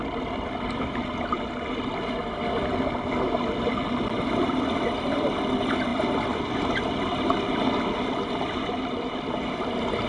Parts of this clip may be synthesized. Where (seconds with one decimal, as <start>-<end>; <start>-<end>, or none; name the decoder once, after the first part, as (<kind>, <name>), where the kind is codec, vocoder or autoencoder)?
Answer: none